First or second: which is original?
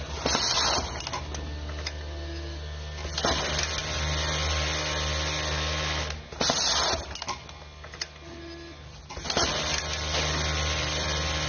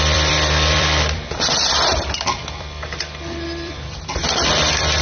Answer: first